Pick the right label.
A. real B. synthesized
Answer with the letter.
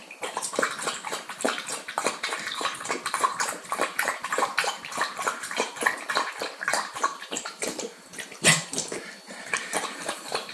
B